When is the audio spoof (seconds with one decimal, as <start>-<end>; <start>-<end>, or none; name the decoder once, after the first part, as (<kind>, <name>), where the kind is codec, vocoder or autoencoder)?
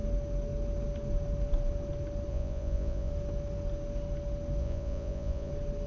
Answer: 2.3-3.1 (vocoder, Vocos); 4.6-5.5